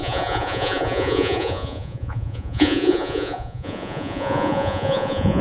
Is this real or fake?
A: fake